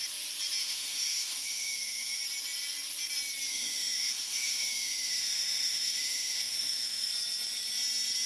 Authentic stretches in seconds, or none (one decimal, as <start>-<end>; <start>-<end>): 0.0-0.6; 2.2-3.5; 7.1-8.3